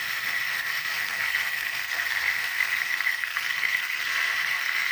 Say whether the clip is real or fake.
fake